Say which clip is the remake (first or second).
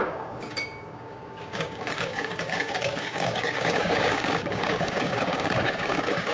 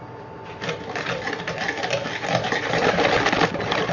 first